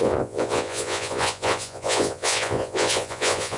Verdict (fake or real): fake